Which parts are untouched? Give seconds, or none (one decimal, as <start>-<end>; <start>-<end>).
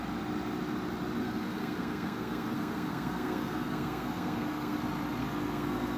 0.0-1.2; 4.8-5.2